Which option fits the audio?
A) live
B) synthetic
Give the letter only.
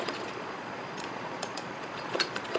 B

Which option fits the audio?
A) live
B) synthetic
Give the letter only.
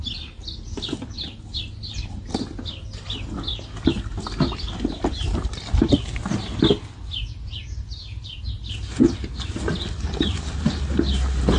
A